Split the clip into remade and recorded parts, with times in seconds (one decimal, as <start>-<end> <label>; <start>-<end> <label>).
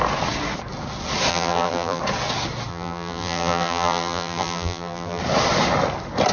0.0-1.3 recorded; 1.3-2.0 remade; 2.0-2.7 recorded; 2.7-5.2 remade; 5.2-6.3 recorded